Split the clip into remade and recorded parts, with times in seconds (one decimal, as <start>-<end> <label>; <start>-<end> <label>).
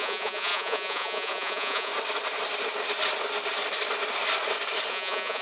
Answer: 0.0-1.9 remade; 1.9-4.9 recorded; 4.9-5.4 remade